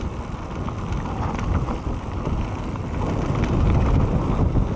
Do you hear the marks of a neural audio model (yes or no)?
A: no